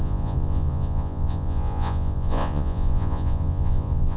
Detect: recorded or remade remade